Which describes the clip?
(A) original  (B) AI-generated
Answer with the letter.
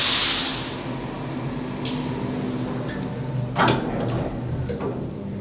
A